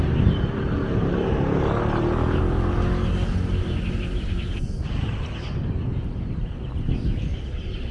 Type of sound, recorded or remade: recorded